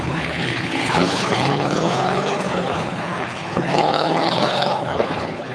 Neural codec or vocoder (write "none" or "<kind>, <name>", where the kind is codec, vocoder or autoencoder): codec, HILCodec